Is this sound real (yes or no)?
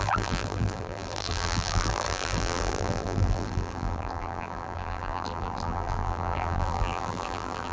no